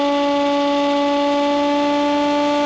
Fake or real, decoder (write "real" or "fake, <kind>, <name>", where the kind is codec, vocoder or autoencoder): real